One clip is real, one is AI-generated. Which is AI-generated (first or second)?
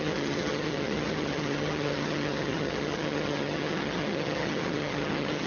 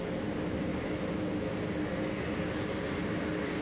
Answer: first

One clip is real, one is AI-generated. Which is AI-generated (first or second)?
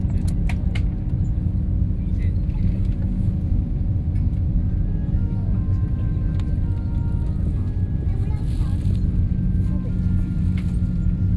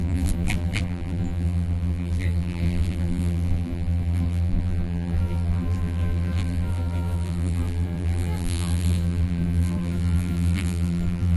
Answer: second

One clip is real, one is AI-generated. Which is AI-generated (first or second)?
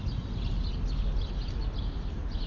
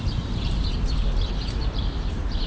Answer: second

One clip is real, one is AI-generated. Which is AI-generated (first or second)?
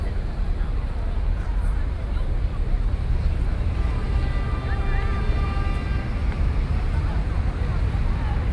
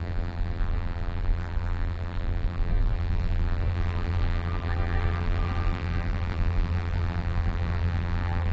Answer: second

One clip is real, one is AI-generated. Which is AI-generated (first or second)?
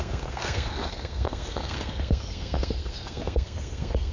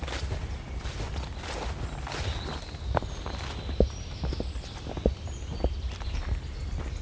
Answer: first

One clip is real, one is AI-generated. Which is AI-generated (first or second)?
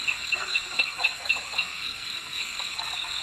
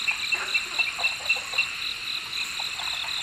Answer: first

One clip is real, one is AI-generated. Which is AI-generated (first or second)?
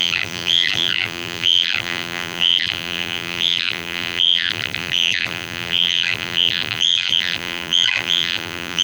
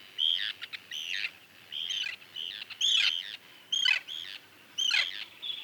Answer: first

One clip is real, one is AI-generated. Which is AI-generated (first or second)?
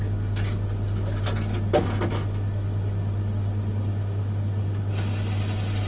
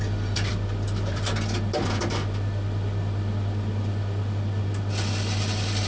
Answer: second